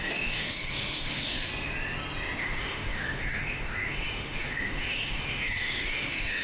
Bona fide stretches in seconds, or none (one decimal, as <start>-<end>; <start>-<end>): 1.5-2.4